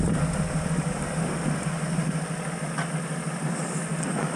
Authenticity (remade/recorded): recorded